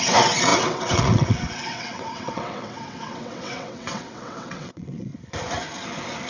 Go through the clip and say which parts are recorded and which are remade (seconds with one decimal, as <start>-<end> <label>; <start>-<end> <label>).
0.0-5.1 remade; 5.1-6.3 recorded

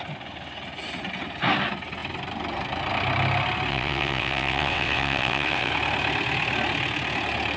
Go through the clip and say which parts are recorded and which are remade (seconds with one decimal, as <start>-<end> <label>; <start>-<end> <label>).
0.0-3.7 recorded; 3.7-5.7 remade; 5.7-7.6 recorded

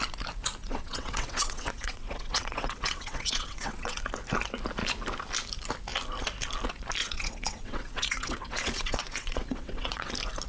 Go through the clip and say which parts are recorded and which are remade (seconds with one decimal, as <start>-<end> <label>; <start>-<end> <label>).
0.0-0.6 recorded; 0.6-4.0 remade; 4.0-7.0 recorded; 7.0-10.1 remade; 10.1-10.5 recorded

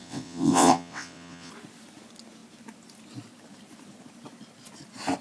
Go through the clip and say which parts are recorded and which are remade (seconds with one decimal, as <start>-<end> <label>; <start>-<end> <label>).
0.0-1.5 remade; 1.5-5.2 recorded

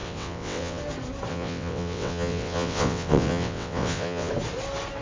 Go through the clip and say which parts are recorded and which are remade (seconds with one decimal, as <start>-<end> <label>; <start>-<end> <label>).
0.0-0.8 remade; 0.8-1.3 recorded; 1.3-4.3 remade; 4.3-5.0 recorded